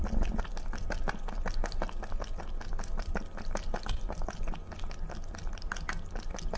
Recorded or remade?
recorded